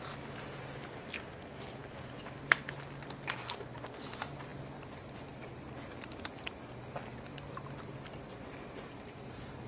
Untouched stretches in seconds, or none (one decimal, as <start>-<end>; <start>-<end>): 0.0-9.7